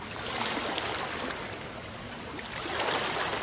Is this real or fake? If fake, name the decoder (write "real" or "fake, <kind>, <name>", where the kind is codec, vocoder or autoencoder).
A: real